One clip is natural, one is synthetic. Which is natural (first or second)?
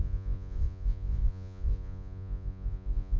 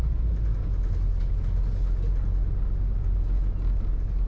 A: second